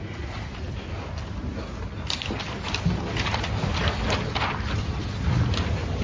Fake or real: real